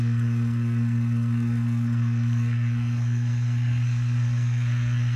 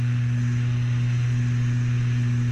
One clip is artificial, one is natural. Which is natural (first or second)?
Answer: second